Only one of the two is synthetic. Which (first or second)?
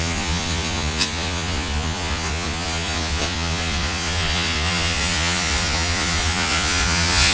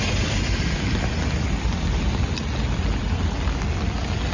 first